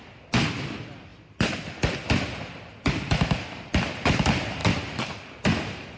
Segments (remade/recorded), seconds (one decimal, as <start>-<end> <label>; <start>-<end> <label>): 0.0-6.0 recorded